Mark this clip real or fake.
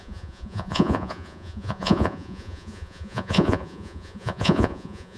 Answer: fake